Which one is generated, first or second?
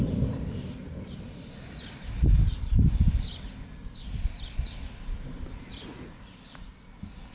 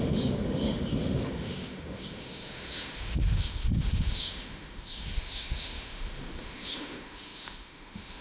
second